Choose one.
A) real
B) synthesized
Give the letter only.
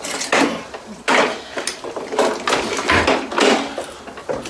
A